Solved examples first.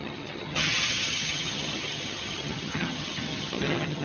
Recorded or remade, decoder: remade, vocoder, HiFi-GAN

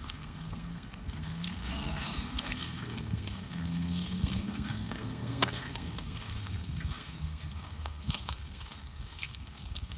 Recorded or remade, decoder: remade, codec, SNAC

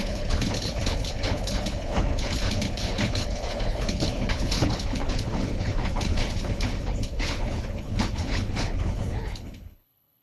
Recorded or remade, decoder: remade, codec, HILCodec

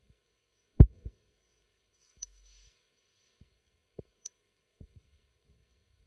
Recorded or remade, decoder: remade, codec, SNAC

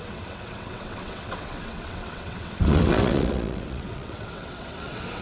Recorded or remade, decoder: remade, vocoder, WaveNeXt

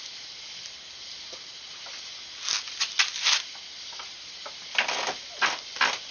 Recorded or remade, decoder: recorded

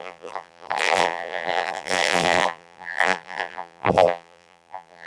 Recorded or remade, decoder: remade, vocoder, BigVGAN v2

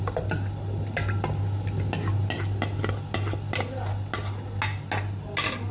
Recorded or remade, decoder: recorded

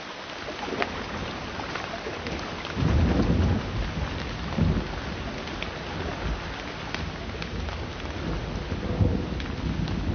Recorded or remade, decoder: recorded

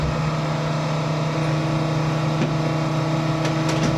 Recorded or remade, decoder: recorded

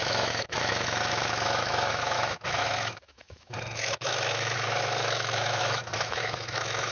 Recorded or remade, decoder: remade, autoencoder, DAC-VAE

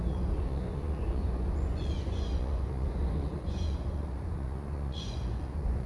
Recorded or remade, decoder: remade, vocoder, Vocos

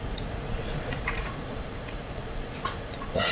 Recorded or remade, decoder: remade, vocoder, Vocos